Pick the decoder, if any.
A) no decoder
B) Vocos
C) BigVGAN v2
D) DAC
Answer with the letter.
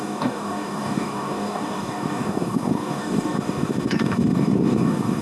D